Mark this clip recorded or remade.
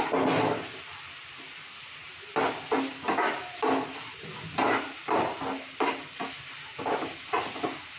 recorded